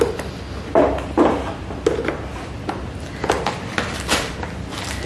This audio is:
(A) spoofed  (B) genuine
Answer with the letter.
B